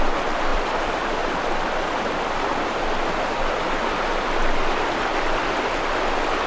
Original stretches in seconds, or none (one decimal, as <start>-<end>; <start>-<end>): 0.0-0.5; 1.5-6.5